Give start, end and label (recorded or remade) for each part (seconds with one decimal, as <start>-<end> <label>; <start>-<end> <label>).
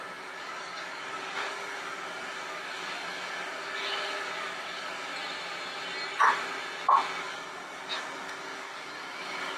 0.0-5.1 remade; 5.1-7.2 recorded; 7.2-9.6 remade